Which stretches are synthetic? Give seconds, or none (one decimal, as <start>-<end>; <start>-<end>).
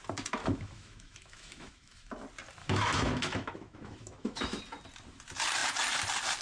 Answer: 0.4-2.1; 2.6-4.6